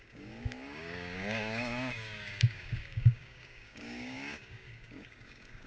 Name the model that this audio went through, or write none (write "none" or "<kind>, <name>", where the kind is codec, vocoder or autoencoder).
codec, DAC